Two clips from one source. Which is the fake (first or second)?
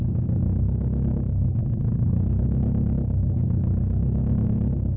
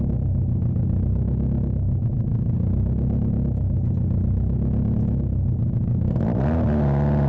first